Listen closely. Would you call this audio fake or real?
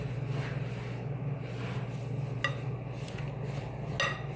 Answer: real